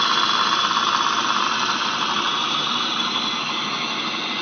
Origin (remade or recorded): recorded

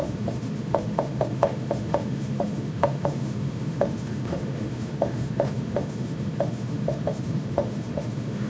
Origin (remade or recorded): remade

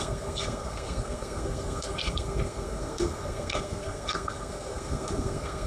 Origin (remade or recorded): remade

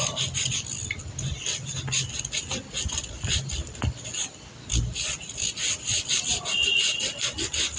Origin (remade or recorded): recorded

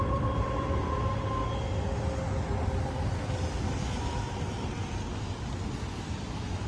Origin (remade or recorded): recorded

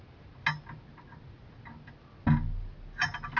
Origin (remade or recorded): recorded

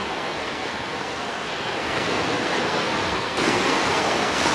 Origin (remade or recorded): remade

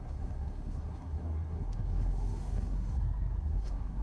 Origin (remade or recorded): remade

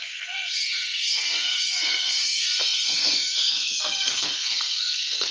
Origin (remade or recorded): remade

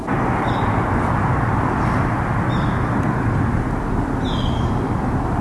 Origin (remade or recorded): recorded